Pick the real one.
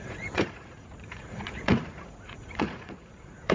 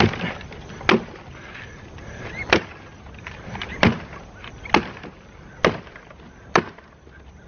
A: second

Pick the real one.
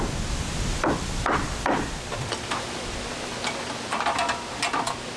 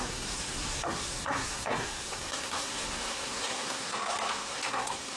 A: first